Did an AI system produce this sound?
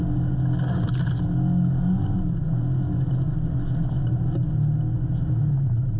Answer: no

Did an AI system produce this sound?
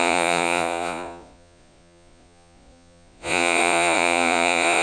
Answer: yes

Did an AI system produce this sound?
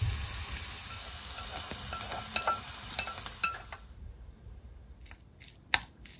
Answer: no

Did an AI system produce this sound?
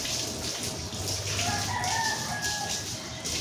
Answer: no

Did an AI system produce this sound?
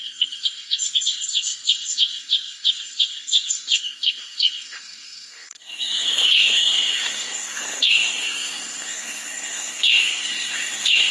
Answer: yes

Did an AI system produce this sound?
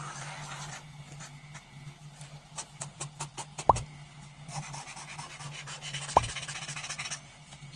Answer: no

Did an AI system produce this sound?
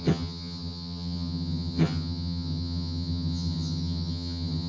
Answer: yes